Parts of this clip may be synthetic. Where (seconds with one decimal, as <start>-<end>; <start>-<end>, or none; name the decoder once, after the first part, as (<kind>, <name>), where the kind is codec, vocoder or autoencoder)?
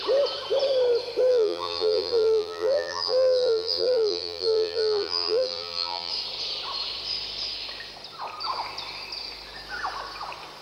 1.3-6.1 (vocoder, BigVGAN v2)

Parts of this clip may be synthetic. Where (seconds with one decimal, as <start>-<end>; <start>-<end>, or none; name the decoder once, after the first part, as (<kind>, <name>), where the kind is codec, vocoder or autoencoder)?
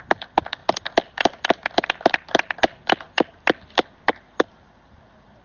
none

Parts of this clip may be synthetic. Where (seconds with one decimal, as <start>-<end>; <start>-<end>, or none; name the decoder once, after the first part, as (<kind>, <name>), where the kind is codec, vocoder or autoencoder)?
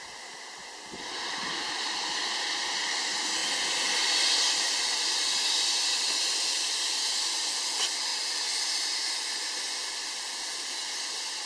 none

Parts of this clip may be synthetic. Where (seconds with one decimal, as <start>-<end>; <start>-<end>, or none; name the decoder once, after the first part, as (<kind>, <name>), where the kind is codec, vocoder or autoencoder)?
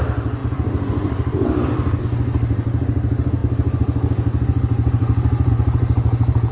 0.4-2.0 (vocoder, BigVGAN v2)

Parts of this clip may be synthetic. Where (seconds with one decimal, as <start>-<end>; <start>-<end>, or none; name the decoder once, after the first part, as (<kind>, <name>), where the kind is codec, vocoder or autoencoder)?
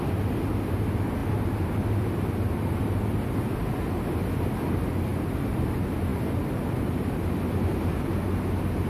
6.1-7.1 (vocoder, BigVGAN v2)